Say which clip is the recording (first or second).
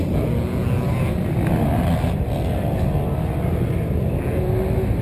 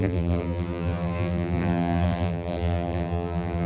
first